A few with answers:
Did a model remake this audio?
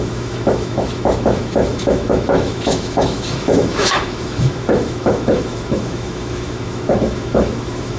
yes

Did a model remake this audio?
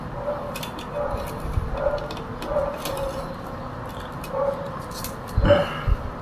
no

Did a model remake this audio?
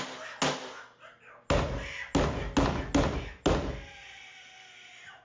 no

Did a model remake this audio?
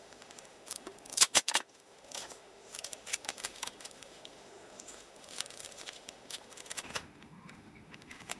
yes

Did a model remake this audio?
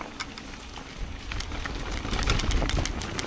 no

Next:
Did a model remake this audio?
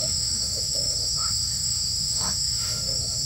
yes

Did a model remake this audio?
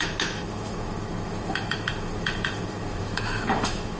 yes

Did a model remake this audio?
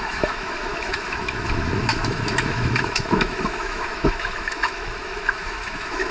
yes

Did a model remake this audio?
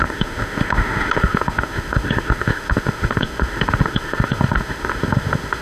yes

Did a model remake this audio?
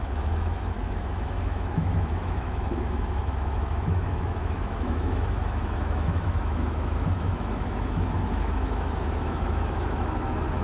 yes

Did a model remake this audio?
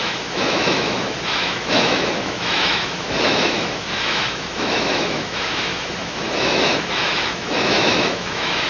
yes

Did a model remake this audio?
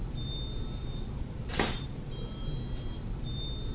no